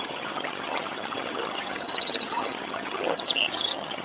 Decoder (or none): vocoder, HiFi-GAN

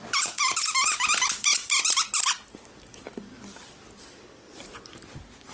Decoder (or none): none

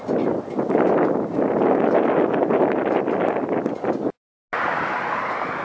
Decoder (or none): none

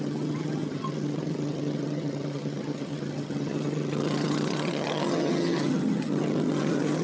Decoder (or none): vocoder, HiFi-GAN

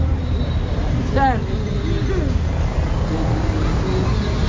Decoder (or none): none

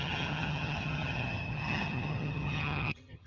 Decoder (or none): vocoder, HiFi-GAN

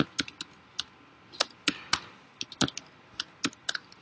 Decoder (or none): none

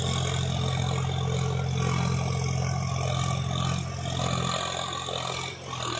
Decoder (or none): none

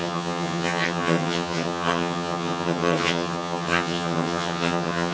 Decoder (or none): vocoder, HiFi-GAN